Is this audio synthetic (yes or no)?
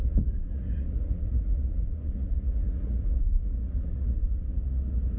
yes